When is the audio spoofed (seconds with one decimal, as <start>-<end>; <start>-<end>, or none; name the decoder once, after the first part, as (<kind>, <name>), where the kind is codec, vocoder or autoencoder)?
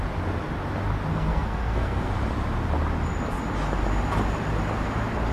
1.1-2.1 (codec, SNAC)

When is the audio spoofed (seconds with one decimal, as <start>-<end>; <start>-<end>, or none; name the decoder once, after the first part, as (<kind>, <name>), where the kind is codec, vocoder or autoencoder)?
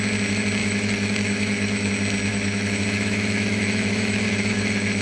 0.6-1.9 (autoencoder, DAC-VAE); 2.3-5.0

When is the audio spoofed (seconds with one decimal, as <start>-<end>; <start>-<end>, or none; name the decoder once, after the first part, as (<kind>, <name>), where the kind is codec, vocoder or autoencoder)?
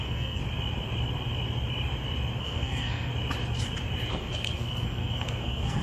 0.0-0.4 (codec, SNAC); 2.4-3.1; 4.1-5.8